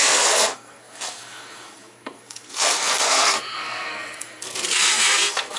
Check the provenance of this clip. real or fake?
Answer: fake